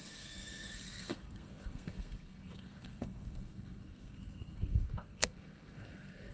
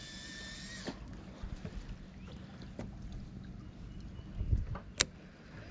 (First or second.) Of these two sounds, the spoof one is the first